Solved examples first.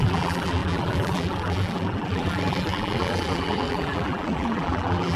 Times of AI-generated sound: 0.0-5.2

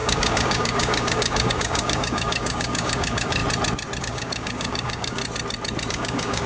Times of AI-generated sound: 0.0-3.4; 4.0-5.2; 5.9-6.5

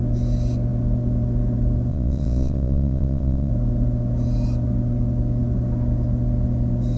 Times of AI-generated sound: 1.9-3.5